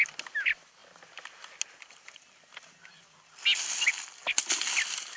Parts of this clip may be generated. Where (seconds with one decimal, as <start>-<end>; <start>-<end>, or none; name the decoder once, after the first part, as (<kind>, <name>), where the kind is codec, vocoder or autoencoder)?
none